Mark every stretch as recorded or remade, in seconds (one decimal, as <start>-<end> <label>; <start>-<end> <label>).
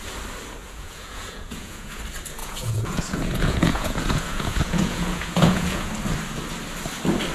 0.0-0.6 recorded; 0.6-2.0 remade; 2.0-2.4 recorded; 2.4-5.9 remade; 5.9-7.3 recorded